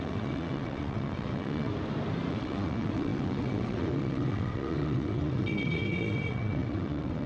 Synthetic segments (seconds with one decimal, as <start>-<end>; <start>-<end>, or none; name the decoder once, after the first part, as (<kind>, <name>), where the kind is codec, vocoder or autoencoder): 0.0-1.7 (vocoder, WaveNeXt); 2.3-7.3